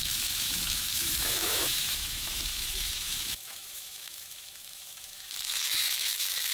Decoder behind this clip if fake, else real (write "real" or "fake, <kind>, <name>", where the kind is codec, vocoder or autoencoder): fake, autoencoder, DAC-VAE